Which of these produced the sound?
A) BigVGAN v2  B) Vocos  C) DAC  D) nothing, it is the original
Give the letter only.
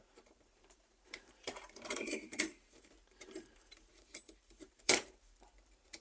A